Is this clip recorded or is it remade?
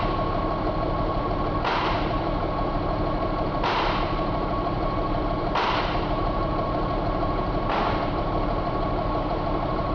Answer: remade